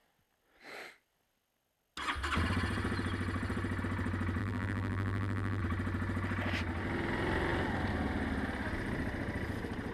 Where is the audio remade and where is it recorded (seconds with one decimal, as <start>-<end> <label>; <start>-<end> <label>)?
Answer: 0.0-4.4 recorded; 4.4-5.6 remade; 5.6-9.9 recorded